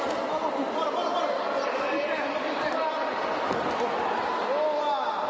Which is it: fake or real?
real